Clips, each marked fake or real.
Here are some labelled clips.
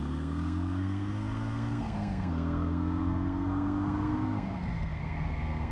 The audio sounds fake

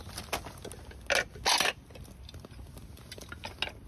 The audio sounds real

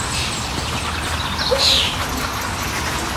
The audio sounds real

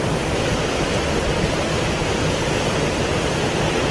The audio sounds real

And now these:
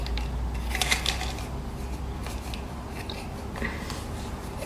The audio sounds real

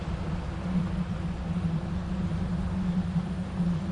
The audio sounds real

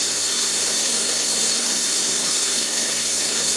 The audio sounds fake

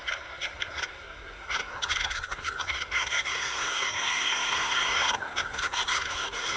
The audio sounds fake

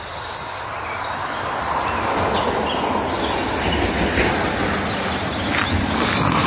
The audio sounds real